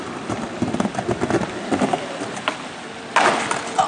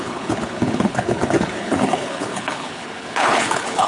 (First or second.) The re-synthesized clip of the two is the second